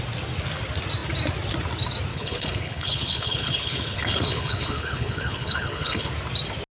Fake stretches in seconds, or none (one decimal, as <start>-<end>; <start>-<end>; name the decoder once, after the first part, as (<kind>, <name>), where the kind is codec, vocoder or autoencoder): 2.1-6.1 (codec, HILCodec)